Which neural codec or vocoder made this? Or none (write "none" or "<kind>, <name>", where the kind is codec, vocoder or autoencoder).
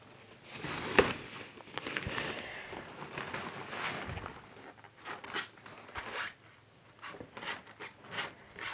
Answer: none